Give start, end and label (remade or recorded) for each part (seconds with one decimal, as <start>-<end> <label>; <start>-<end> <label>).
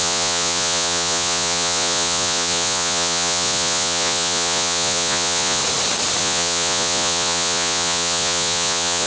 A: 0.0-5.6 remade; 5.6-6.2 recorded; 6.2-9.1 remade